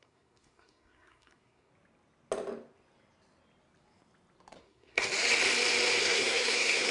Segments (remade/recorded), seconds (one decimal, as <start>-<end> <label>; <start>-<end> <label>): 0.0-1.7 remade; 1.7-4.6 recorded; 4.6-5.0 remade; 5.0-6.0 recorded; 6.0-6.9 remade